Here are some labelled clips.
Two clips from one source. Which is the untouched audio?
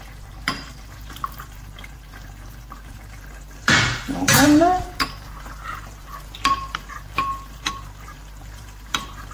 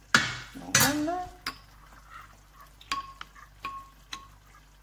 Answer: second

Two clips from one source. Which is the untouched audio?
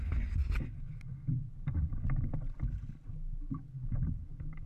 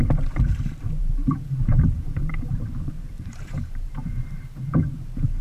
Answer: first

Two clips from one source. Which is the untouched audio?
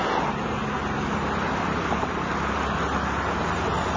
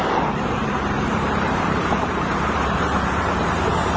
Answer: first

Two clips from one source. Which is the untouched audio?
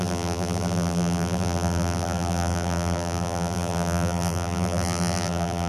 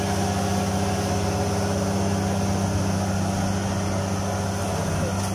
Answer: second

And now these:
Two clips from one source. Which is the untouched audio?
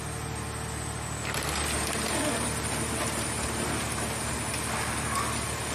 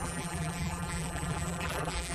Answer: first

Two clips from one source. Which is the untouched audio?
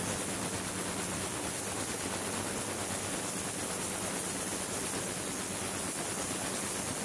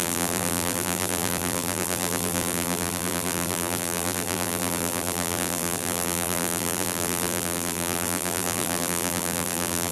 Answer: first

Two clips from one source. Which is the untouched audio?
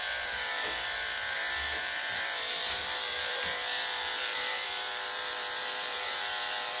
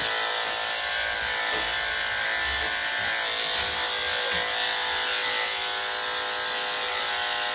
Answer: second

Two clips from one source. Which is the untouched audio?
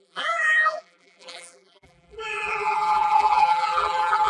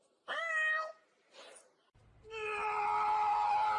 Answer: second